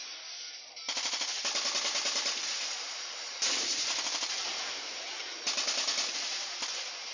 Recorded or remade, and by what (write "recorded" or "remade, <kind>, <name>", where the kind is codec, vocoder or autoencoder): recorded